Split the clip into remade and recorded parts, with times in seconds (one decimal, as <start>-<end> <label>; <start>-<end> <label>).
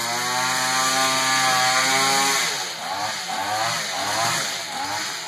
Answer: 0.0-5.3 recorded